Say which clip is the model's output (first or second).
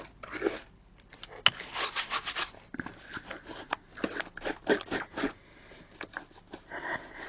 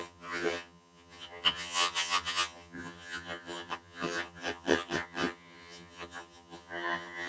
second